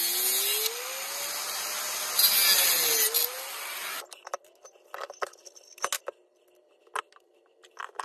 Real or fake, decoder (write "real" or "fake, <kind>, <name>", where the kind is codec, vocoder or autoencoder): real